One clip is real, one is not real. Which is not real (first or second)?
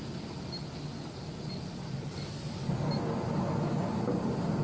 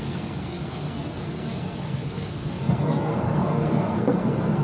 second